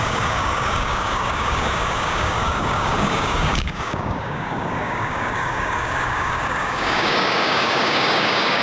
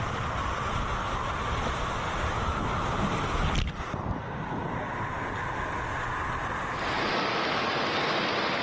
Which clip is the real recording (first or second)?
second